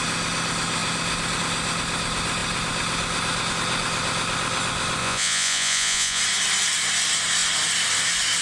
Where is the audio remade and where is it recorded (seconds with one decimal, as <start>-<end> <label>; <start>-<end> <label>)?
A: 0.0-5.0 recorded; 5.0-6.2 remade; 6.2-8.4 recorded